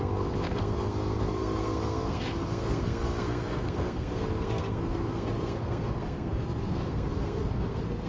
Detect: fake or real fake